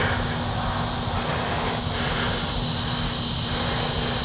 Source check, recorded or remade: recorded